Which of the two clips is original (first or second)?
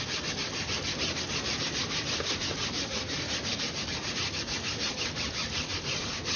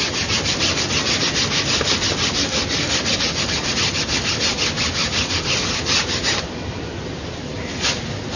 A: second